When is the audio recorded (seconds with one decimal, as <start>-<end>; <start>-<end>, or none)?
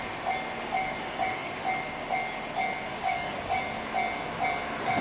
0.0-0.8; 1.7-2.9; 3.6-5.0